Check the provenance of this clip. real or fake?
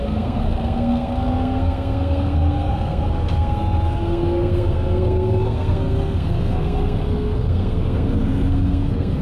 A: fake